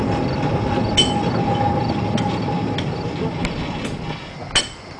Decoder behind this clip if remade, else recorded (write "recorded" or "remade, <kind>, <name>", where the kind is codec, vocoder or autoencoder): recorded